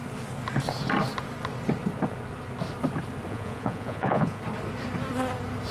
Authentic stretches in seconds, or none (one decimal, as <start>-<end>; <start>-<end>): 0.0-3.3; 4.4-5.7

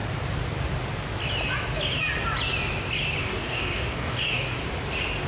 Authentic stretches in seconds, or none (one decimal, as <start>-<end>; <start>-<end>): 0.0-3.2; 4.6-5.3

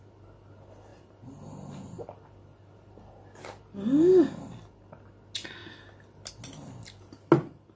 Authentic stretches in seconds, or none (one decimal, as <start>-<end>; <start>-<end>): 0.0-7.8

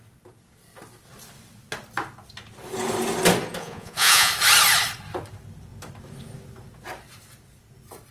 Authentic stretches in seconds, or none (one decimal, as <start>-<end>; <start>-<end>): 0.0-3.6; 4.3-8.1

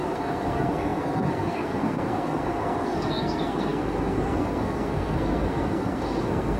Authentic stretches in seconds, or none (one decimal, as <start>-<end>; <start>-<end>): none